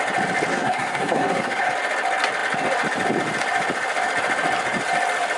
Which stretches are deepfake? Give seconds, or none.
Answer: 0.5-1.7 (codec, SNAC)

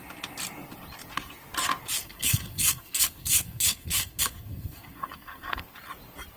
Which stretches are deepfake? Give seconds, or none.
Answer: 2.0-5.6 (codec, SNAC)